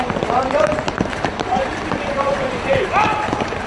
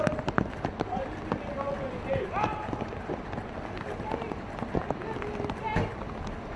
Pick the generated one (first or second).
first